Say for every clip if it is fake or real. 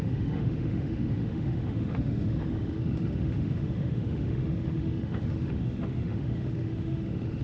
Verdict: fake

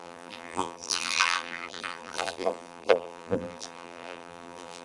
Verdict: fake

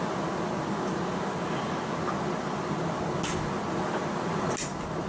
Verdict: real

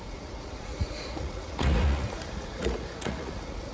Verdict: fake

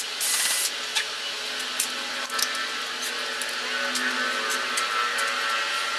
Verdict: real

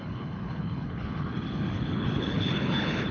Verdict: fake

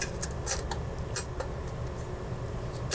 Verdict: real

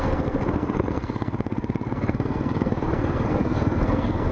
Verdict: fake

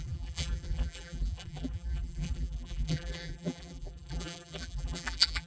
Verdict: fake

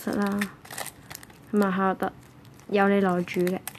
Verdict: real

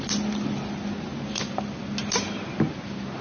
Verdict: real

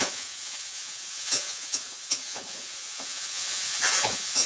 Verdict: fake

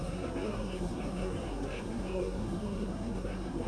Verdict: fake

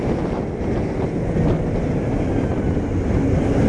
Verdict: real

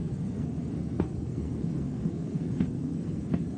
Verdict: fake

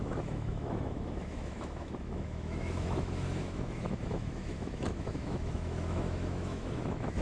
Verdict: fake